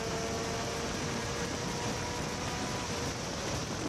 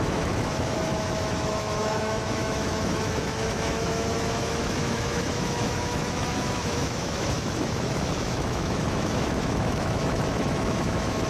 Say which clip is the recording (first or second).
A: first